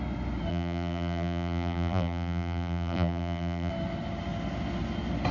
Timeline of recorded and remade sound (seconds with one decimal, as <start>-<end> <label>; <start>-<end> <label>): 0.0-0.5 recorded; 0.5-3.7 remade; 3.7-5.3 recorded